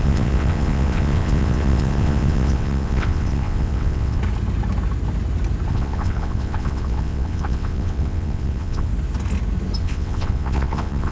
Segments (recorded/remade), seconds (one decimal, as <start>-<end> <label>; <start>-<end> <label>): 0.0-4.2 remade; 4.2-5.7 recorded; 5.7-8.9 remade; 8.9-9.8 recorded; 9.8-11.1 remade

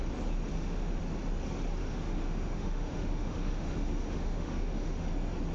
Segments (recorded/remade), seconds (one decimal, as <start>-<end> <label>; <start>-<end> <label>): 0.0-0.5 recorded; 0.5-1.0 remade; 1.0-1.8 recorded; 1.8-5.1 remade; 5.1-5.5 recorded

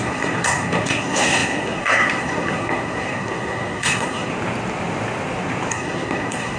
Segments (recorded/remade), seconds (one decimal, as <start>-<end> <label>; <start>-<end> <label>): 0.0-4.3 remade; 4.3-5.7 recorded; 5.7-6.6 remade

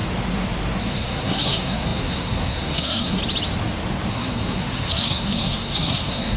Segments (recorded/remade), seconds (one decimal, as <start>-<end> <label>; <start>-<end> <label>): 0.0-0.8 recorded; 0.8-3.2 remade; 3.2-4.1 recorded; 4.1-6.4 remade

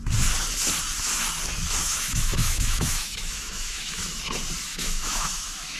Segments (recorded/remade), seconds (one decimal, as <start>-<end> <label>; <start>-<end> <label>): 0.0-1.8 recorded; 1.8-4.2 remade; 4.2-4.7 recorded; 4.7-5.8 remade

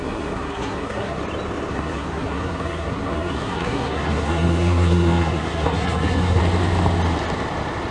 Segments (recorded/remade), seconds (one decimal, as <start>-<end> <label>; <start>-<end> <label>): 0.0-1.2 remade; 1.2-1.7 recorded; 1.7-6.4 remade; 6.4-7.9 recorded